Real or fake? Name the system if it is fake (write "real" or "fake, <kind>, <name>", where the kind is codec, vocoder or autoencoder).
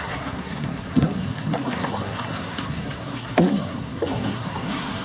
fake, codec, SNAC